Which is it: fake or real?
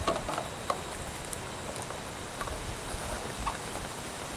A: real